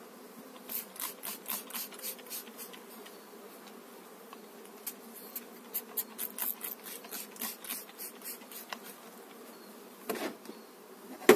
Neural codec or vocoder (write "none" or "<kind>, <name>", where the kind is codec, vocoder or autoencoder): none